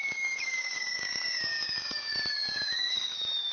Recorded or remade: remade